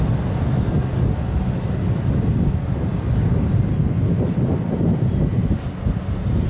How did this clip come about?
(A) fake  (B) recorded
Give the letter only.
B